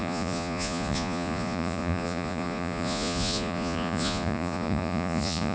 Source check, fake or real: fake